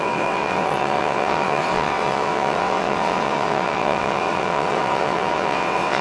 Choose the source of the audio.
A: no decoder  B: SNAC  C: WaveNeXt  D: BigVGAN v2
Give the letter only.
C